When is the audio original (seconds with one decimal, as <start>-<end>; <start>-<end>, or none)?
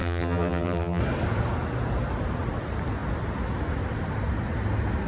1.0-5.1